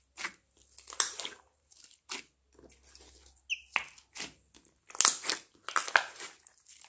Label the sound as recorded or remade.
recorded